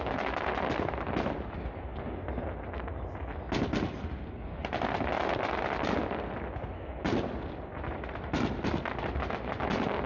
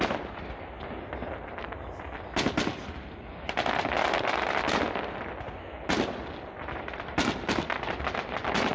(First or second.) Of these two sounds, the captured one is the first